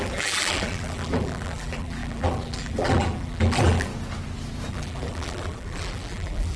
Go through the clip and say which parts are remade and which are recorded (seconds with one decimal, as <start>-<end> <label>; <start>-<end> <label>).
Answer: 0.0-3.9 remade; 3.9-4.7 recorded; 4.7-6.6 remade